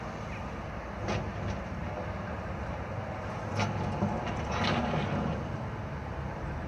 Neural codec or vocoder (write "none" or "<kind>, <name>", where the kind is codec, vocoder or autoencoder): none